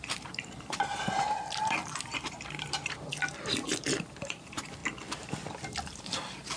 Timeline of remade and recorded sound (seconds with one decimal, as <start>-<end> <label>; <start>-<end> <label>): 0.0-3.1 remade; 3.1-3.8 recorded; 3.8-4.8 remade; 4.8-6.0 recorded; 6.0-6.6 remade